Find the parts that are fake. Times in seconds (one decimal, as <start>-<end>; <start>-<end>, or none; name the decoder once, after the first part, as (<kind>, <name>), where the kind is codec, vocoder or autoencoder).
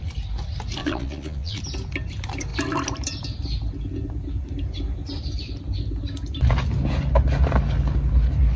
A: 0.8-1.6 (vocoder, Vocos)